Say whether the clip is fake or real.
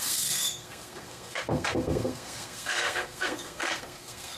fake